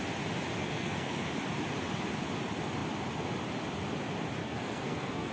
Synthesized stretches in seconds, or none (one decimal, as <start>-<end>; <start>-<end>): 0.6-1.3; 4.4-5.3